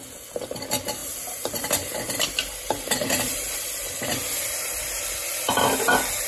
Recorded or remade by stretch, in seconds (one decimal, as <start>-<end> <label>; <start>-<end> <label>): 0.0-1.0 recorded; 1.0-4.8 remade; 4.8-6.3 recorded